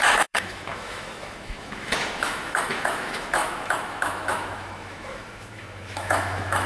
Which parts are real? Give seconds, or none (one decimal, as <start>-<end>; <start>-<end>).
none